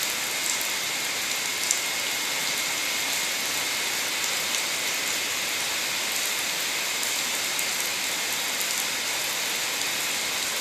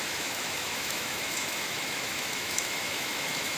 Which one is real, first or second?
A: first